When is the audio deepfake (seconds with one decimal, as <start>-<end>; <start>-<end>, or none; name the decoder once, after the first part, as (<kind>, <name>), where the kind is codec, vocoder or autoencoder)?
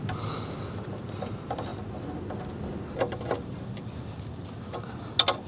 none